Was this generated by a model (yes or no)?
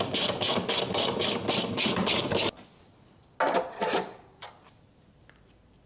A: no